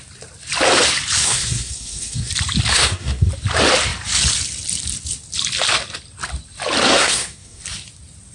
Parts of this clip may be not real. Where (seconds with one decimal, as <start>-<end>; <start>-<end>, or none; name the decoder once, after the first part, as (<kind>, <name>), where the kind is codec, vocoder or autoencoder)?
1.2-2.3 (codec, SNAC); 2.7-3.3; 6.9-7.6